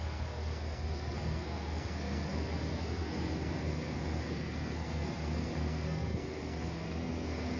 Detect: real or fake fake